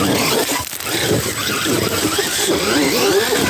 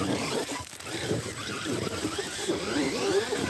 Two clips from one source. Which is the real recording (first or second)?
first